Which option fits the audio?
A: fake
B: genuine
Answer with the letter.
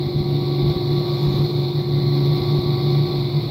B